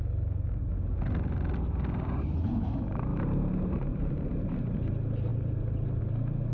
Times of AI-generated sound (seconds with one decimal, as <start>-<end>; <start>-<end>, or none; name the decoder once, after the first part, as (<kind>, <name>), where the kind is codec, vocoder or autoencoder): 3.1-4.4 (vocoder, BigVGAN v2); 5.3-6.0

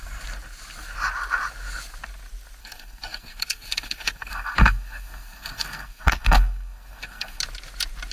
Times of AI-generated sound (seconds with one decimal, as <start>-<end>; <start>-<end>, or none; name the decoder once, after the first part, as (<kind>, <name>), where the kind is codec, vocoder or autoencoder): 2.6-7.4 (codec, SNAC)